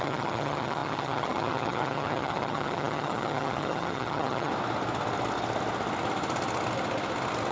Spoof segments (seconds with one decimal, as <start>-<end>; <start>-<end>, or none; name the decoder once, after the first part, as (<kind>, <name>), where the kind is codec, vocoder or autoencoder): 0.0-4.5 (vocoder, HiFi-GAN)